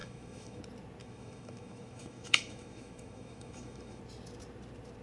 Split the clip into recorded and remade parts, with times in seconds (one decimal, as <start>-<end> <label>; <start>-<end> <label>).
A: 0.0-0.6 remade; 0.6-1.0 recorded; 1.0-4.0 remade; 4.0-5.0 recorded